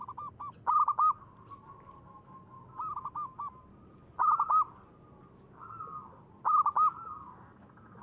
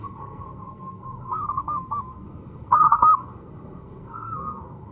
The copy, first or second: second